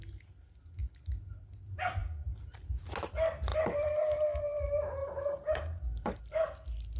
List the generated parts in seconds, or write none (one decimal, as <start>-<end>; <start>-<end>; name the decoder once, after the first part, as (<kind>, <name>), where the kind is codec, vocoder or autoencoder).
2.0-2.7 (vocoder, BigVGAN v2); 3.5-4.4; 5.0-6.2